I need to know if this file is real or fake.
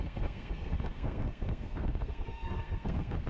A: fake